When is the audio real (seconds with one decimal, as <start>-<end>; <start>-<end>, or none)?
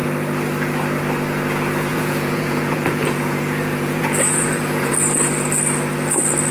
0.0-1.9; 4.9-6.5